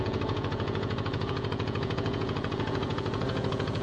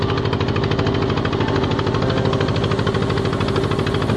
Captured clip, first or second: second